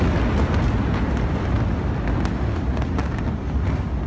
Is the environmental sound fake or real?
real